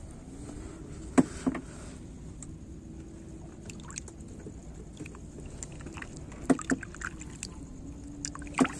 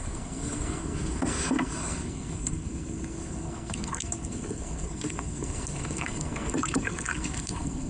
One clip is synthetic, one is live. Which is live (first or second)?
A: first